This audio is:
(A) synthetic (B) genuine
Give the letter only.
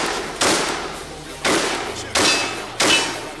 B